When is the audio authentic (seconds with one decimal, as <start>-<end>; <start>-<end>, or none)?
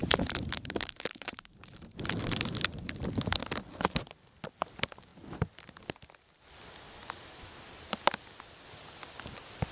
3.0-9.7